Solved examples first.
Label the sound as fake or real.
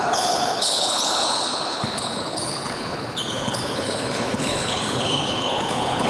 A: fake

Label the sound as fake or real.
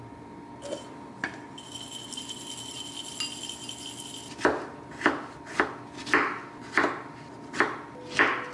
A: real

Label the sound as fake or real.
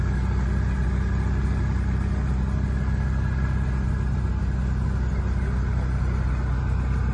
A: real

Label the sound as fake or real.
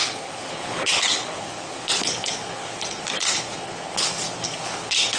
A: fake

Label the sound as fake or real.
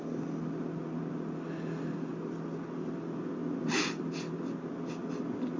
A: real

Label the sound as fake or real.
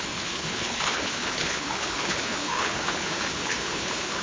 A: fake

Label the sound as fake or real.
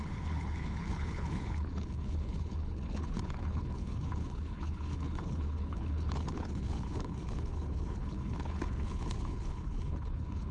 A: fake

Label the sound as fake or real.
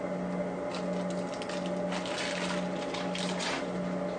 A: real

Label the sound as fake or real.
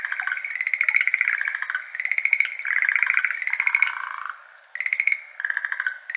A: real